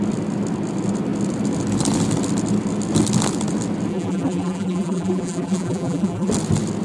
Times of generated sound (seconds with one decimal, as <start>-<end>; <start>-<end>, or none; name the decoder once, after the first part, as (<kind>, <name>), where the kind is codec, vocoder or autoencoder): 3.9-6.3 (vocoder, BigVGAN v2)